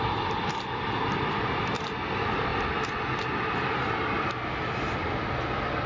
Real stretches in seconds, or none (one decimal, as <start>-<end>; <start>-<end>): 2.5-4.2